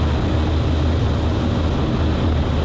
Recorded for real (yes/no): yes